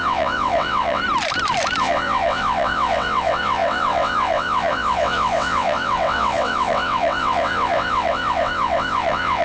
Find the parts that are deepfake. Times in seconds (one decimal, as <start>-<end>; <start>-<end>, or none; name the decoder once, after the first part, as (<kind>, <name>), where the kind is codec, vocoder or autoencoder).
0.0-1.0 (vocoder, WaveNeXt); 1.8-9.4